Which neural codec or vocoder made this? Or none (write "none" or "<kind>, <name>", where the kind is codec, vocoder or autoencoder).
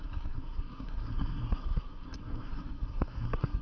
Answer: codec, SNAC